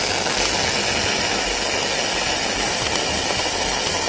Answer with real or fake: real